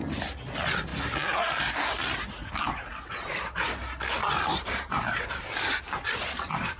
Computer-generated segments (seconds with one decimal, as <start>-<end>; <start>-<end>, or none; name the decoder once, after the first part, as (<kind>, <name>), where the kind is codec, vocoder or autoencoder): 4.2-5.4 (vocoder, BigVGAN v2)